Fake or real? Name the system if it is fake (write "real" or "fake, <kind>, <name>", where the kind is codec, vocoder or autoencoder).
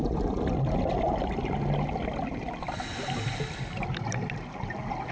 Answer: real